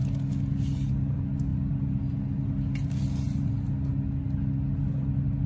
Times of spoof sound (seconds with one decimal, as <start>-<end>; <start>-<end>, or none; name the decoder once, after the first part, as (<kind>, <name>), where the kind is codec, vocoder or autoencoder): none